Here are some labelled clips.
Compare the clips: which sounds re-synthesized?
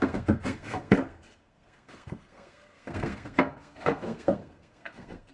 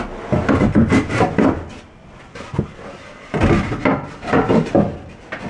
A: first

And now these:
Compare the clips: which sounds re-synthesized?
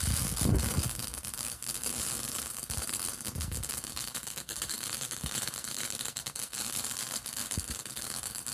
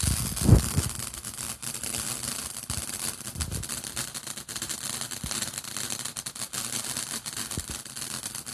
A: first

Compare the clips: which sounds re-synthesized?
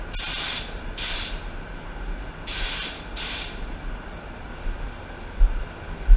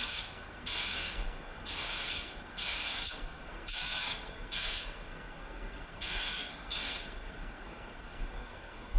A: second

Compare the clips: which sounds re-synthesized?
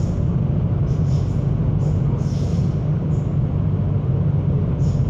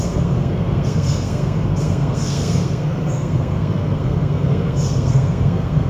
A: second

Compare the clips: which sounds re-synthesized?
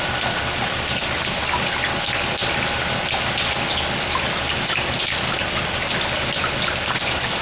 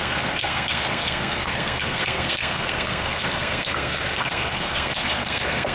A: second